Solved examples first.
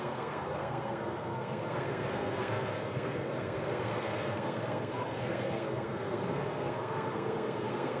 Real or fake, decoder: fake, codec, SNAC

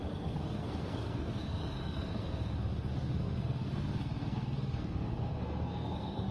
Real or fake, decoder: fake, codec, SNAC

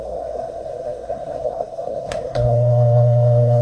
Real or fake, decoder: fake, codec, SNAC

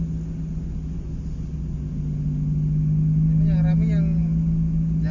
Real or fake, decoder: real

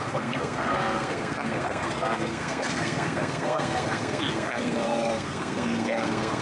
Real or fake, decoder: fake, codec, SNAC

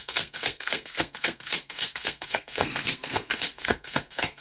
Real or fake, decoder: fake, codec, SNAC